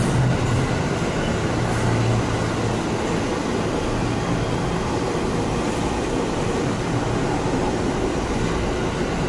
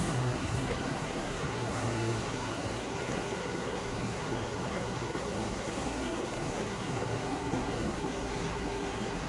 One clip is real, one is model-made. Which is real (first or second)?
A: first